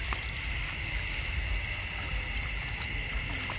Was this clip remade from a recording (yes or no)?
no